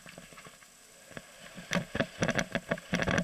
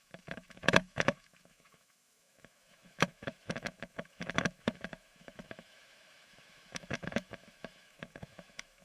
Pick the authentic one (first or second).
first